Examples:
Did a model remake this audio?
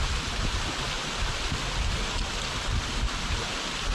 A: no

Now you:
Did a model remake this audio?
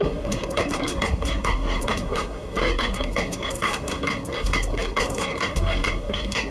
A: yes